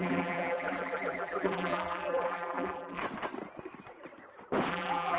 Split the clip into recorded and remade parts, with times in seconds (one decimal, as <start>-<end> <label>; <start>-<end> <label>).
0.0-3.0 remade; 3.0-4.7 recorded; 4.7-5.2 remade